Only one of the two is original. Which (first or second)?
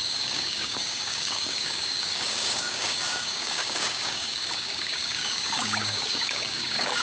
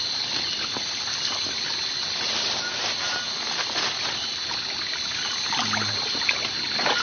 second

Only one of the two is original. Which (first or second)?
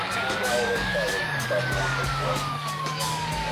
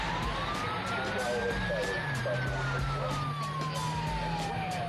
second